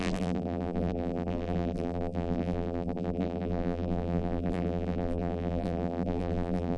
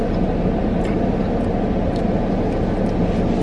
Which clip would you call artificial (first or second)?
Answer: first